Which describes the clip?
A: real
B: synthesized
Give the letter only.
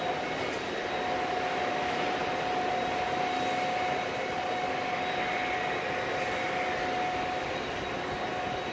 A